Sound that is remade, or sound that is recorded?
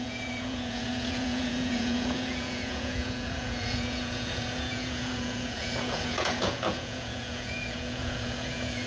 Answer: remade